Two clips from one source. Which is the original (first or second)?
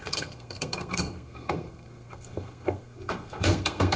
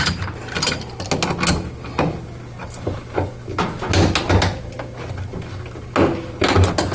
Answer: second